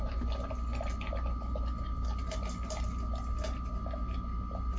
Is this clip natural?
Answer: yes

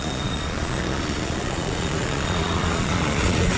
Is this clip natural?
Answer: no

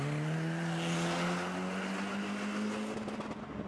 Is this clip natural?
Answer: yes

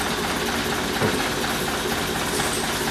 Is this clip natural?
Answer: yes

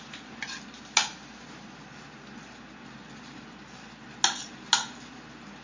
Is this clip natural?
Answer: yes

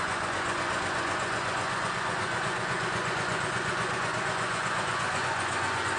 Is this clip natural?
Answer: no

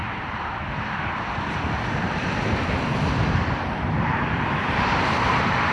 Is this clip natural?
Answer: no